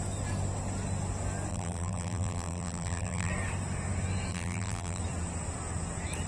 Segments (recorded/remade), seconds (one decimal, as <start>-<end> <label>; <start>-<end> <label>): 0.0-1.5 recorded; 1.5-3.3 remade; 3.3-4.3 recorded; 4.3-5.0 remade; 5.0-6.3 recorded